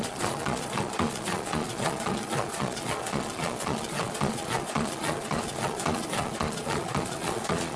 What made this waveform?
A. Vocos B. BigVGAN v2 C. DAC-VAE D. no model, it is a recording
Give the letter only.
A